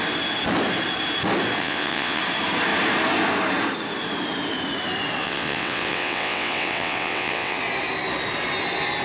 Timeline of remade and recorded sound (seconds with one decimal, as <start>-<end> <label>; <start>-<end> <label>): 0.0-1.6 recorded; 1.6-2.2 remade; 2.2-5.2 recorded; 5.2-7.6 remade; 7.6-9.0 recorded